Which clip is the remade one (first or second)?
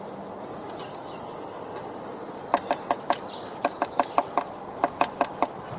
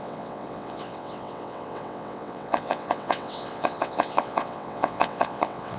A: second